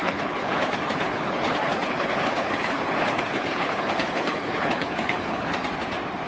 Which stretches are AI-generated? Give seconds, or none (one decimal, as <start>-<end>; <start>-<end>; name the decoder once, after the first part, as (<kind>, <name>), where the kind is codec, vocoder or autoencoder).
0.0-5.5 (codec, HILCodec)